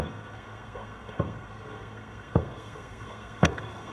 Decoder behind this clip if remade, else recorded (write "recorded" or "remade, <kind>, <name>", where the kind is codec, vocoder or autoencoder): remade, codec, SNAC